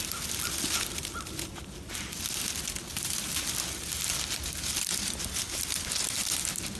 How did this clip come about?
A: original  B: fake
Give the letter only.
A